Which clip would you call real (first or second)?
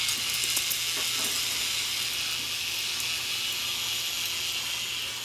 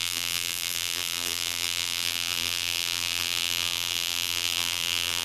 first